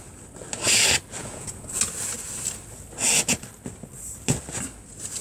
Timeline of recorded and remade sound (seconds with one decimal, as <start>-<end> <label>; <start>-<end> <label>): 0.0-1.2 recorded; 1.2-1.8 remade; 1.8-5.2 recorded